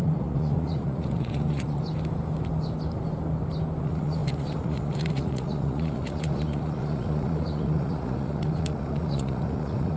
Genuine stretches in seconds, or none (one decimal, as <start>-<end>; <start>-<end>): 1.8-3.8